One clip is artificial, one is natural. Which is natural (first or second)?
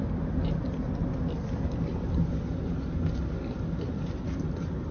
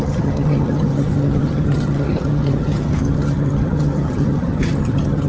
first